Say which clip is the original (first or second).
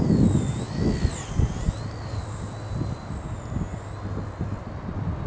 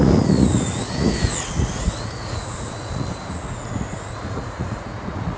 first